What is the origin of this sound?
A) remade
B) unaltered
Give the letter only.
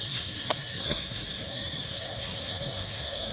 A